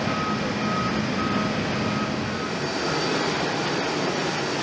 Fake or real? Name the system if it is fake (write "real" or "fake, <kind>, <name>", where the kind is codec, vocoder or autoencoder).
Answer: real